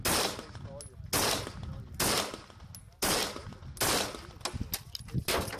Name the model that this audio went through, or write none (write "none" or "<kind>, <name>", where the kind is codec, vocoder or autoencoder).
none